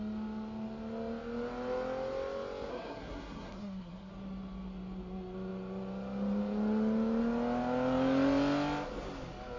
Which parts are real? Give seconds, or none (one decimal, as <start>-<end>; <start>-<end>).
0.0-2.7; 4.1-9.6